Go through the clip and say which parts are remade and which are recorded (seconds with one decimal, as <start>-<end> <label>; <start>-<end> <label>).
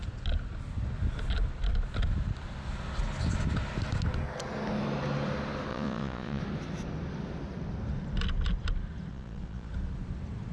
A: 0.0-5.7 recorded; 5.7-6.4 remade; 6.4-9.1 recorded; 9.1-9.7 remade; 9.7-10.5 recorded